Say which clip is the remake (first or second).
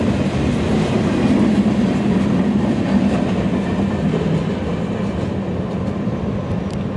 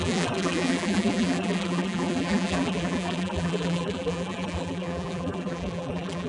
second